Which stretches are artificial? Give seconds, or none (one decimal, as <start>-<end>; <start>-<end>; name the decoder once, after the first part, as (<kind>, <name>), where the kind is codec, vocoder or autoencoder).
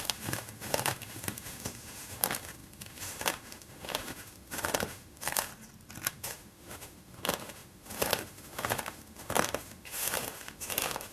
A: 0.0-5.5 (autoencoder, DAC-VAE); 6.1-11.1